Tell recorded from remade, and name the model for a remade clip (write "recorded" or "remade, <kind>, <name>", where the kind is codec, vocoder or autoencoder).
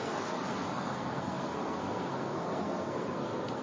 remade, codec, SNAC